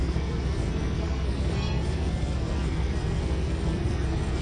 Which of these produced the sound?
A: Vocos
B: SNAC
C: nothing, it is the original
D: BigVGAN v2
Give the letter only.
B